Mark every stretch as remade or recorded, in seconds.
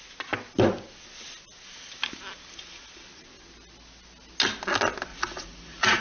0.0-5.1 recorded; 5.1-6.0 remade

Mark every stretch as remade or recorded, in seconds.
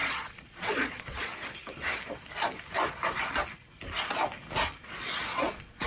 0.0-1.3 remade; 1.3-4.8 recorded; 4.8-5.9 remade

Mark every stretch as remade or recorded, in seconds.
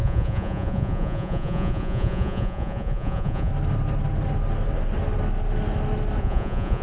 0.0-3.5 remade; 3.5-6.2 recorded; 6.2-6.8 remade